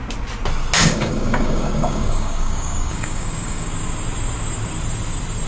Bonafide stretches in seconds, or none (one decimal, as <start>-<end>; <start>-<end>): 0.0-0.8; 3.7-5.5